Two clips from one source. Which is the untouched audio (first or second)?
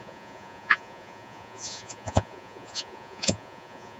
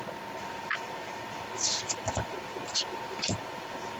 second